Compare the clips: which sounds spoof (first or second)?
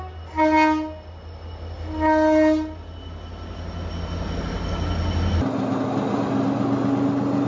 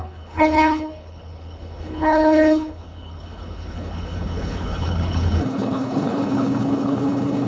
second